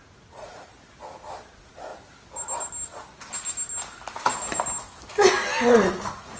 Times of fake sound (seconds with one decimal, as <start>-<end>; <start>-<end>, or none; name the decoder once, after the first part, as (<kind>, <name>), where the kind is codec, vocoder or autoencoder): 0.0-0.7 (vocoder, Vocos); 1.5-1.9; 5.7-6.4